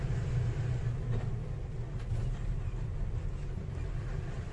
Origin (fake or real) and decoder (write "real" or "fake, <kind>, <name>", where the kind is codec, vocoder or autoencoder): real